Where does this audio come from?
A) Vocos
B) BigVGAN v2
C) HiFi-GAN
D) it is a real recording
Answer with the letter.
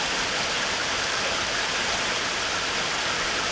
D